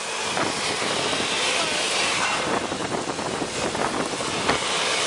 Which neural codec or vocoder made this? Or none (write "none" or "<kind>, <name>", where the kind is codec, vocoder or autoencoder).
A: none